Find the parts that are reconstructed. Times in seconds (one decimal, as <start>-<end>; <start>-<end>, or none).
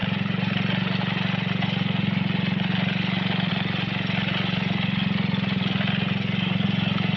none